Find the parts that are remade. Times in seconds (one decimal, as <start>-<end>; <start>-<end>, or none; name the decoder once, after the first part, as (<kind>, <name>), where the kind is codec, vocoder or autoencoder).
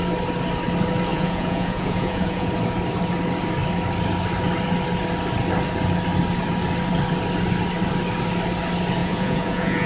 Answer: 1.1-2.5 (vocoder, Vocos); 9.0-9.9